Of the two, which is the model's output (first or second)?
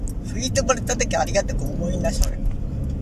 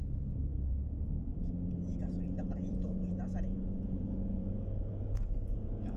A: second